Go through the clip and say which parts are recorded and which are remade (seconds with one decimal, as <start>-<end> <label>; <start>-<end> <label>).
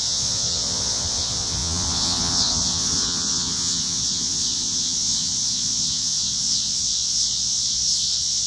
0.0-8.5 remade